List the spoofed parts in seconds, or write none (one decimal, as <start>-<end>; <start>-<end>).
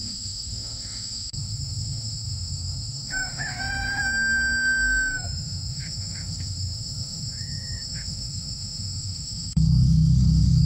0.0-10.7